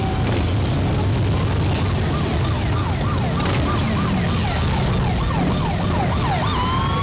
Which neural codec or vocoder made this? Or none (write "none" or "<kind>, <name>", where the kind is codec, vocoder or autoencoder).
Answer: none